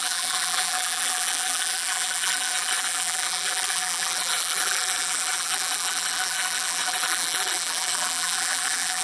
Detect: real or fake fake